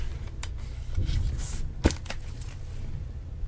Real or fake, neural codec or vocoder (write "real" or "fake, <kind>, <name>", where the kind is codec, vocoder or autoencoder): real